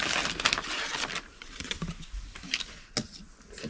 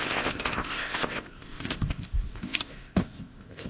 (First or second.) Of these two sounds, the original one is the first